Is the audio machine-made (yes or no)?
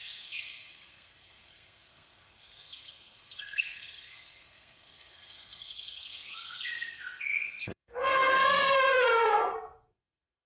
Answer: yes